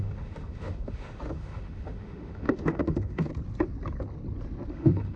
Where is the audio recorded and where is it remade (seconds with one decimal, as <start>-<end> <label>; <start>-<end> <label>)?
0.0-3.3 remade; 3.3-4.7 recorded; 4.7-5.2 remade